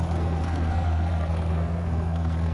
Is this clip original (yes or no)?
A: no